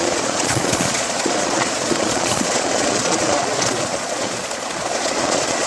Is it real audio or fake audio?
fake